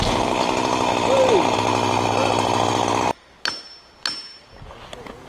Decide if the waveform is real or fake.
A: real